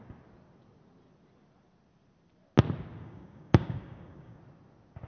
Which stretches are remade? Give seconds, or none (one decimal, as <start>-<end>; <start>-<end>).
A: 3.0-4.4